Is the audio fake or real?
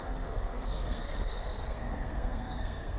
fake